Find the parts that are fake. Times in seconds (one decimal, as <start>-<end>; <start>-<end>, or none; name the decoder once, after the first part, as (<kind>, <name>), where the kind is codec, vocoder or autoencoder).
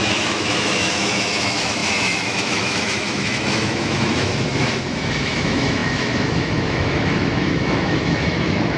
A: 0.0-8.8 (autoencoder, DAC-VAE)